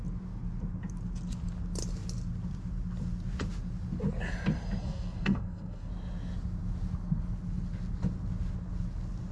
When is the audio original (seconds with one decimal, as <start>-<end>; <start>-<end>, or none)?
0.0-4.8; 5.9-9.3